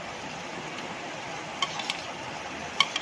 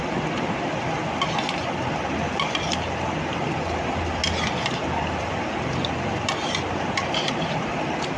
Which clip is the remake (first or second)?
first